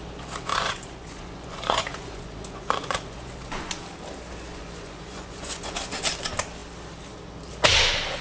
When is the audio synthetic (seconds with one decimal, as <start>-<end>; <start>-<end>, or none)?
0.5-3.8; 4.5-6.0